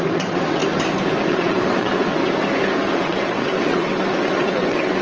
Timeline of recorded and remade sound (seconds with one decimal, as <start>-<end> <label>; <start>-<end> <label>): 0.0-0.6 remade; 0.6-1.3 recorded; 1.3-2.2 remade; 2.2-2.9 recorded; 2.9-5.0 remade